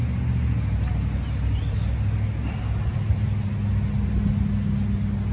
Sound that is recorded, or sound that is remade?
recorded